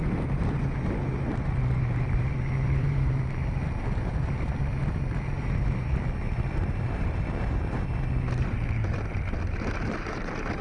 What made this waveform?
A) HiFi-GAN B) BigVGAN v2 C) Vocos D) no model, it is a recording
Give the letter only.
B